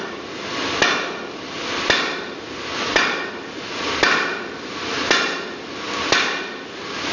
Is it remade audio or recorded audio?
recorded